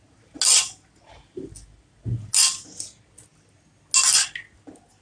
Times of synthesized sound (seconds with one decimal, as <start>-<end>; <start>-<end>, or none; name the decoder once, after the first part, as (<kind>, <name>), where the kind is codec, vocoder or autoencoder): none